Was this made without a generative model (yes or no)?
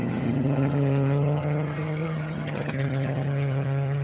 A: no